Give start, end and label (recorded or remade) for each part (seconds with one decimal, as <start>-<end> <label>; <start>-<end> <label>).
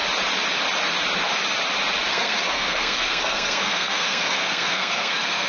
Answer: 0.0-2.1 recorded; 2.1-5.5 remade